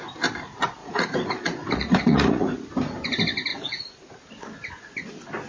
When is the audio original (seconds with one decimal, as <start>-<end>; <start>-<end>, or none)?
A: 0.0-0.8; 2.7-3.5; 4.3-5.5